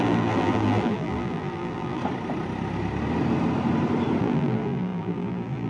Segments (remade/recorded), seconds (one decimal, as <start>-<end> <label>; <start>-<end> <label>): 0.0-2.0 remade; 2.0-4.2 recorded; 4.2-5.7 remade